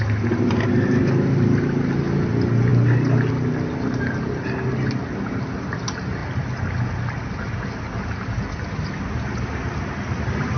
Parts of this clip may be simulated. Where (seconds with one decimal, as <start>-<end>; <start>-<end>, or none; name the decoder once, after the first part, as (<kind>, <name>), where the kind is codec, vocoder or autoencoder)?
none